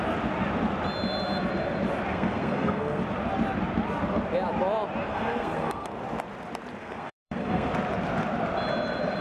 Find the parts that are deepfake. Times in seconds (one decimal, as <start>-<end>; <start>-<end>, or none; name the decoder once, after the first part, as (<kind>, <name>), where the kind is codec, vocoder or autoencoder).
2.1-3.0 (codec, SNAC); 5.0-5.9; 6.8-7.7